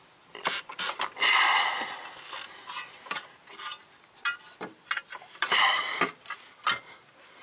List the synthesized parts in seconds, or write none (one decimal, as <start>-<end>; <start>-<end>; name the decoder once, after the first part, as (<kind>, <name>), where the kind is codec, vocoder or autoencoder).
0.4-3.4 (vocoder, BigVGAN v2); 3.8-5.8